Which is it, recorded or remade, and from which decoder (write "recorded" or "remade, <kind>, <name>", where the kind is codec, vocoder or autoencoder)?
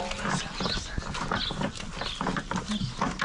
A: recorded